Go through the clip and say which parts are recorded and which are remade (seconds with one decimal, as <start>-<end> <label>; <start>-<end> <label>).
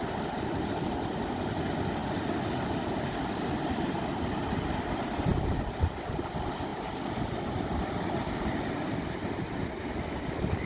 0.0-5.3 recorded; 5.3-6.3 remade; 6.3-6.7 recorded; 6.7-9.8 remade; 9.8-10.7 recorded